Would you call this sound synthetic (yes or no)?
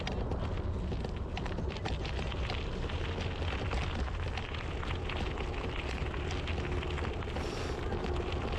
no